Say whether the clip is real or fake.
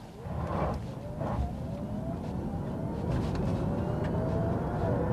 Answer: real